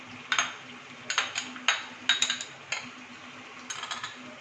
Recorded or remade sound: recorded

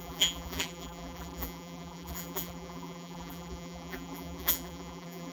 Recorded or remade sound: remade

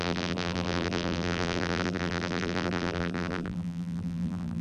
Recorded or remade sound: remade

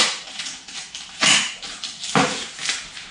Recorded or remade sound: remade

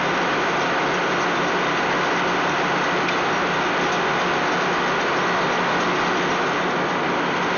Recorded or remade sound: recorded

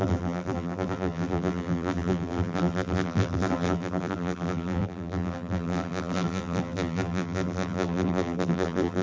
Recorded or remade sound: remade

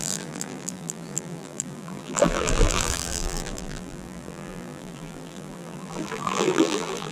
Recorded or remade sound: remade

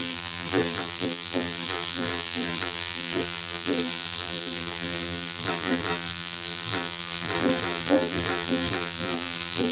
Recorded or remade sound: remade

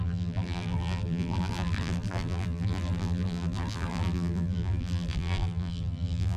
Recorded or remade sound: remade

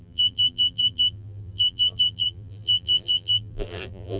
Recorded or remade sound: remade